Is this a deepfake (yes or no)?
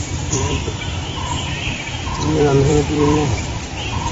yes